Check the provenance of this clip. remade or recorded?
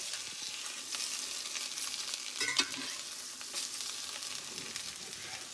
recorded